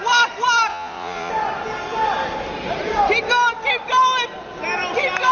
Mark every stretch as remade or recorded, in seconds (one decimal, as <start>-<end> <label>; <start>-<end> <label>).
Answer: 0.0-0.7 recorded; 0.7-1.3 remade; 1.3-5.3 recorded